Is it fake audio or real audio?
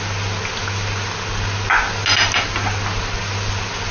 real